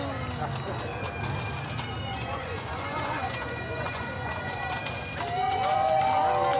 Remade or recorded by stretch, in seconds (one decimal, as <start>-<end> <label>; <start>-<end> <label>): 0.0-2.1 recorded; 2.1-4.6 remade; 4.6-5.4 recorded; 5.4-6.0 remade; 6.0-6.6 recorded